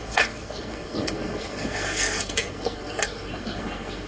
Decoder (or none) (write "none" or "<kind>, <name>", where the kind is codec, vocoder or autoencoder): codec, SNAC